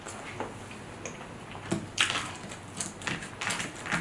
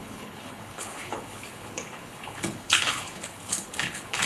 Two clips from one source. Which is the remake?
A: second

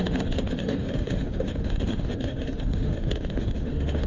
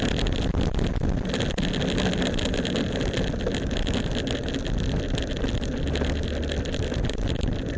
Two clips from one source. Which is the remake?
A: first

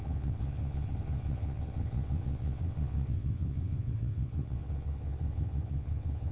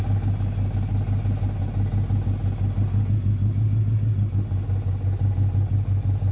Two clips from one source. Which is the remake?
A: first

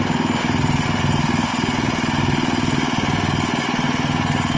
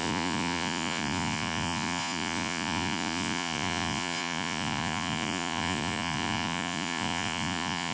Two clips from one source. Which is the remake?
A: second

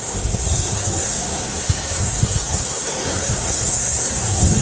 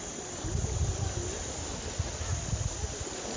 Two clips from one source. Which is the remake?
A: first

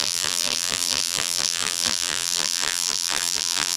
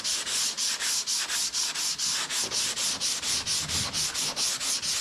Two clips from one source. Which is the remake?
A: first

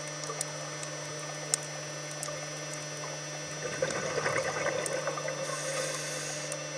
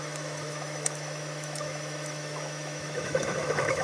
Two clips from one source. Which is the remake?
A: second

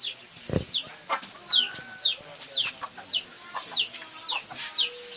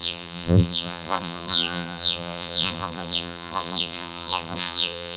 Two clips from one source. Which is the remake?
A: second